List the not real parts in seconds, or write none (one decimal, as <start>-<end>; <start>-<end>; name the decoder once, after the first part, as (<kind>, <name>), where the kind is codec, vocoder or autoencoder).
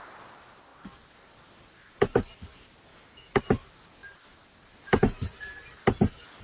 2.9-3.4 (autoencoder, DAC-VAE)